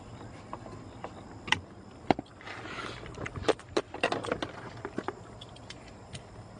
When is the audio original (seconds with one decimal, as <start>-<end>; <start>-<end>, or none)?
0.0-6.6

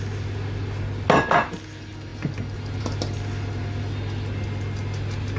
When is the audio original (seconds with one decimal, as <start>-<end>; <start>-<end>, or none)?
0.0-5.4

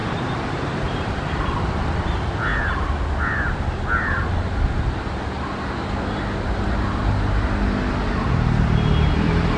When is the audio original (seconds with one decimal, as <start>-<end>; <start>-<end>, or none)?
1.3-9.6

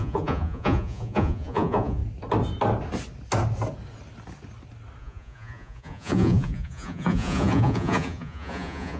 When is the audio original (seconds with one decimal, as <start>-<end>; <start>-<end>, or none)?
2.0-5.0

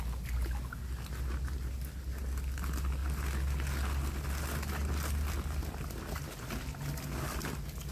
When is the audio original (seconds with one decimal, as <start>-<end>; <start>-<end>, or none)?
0.0-7.9

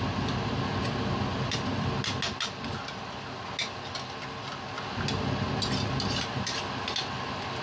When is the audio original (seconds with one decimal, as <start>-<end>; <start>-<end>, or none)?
0.0-7.6

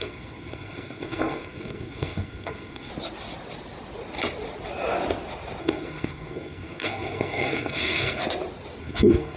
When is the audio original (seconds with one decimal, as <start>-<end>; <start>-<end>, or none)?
2.9-5.6; 8.2-8.8